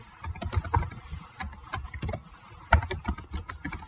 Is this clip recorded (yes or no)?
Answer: yes